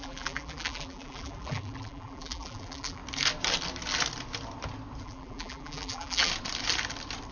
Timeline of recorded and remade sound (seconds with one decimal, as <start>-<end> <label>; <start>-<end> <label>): 0.0-3.0 remade; 3.0-5.0 recorded; 5.0-6.3 remade; 6.3-7.3 recorded